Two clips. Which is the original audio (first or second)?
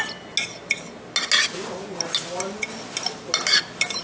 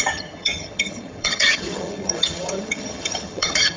first